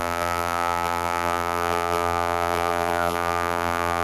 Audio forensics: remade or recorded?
remade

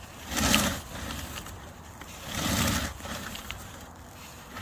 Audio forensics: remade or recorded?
recorded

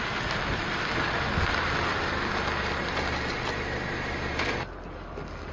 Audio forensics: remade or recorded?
recorded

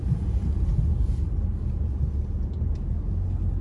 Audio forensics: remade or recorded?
recorded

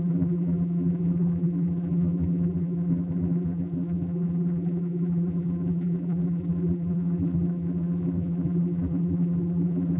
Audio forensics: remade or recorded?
remade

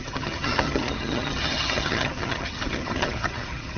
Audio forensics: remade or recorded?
remade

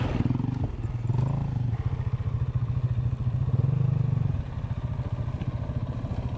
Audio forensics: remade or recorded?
recorded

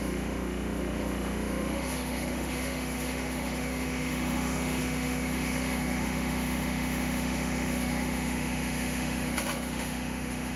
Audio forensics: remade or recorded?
remade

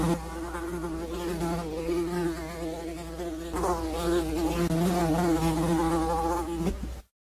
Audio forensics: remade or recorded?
recorded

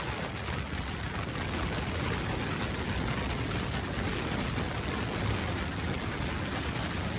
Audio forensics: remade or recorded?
recorded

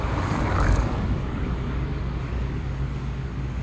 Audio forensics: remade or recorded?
remade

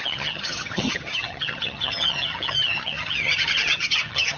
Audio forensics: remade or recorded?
remade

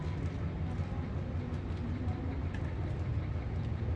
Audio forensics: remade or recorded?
recorded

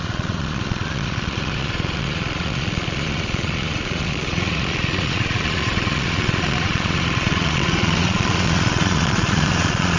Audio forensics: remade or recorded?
remade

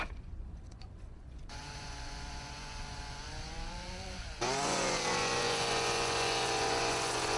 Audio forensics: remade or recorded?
remade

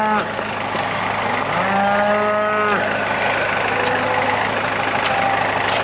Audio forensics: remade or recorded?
recorded